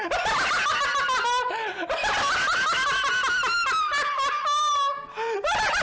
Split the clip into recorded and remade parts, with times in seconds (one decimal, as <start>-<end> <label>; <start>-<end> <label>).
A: 0.0-5.8 recorded